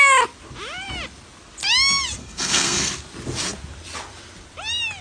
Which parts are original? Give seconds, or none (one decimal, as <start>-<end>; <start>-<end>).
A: 0.0-2.2; 2.9-5.0